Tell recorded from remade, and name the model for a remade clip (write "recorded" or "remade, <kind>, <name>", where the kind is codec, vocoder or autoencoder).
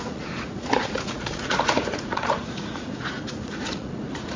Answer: remade, vocoder, Vocos